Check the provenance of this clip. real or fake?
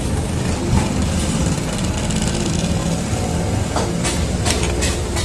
real